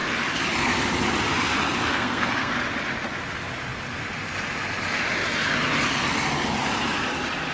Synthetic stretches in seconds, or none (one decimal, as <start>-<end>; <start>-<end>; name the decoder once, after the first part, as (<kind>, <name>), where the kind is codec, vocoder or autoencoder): 1.9-2.5 (codec, SNAC)